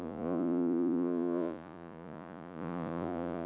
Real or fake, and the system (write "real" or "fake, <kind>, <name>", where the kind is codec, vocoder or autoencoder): fake, vocoder, Vocos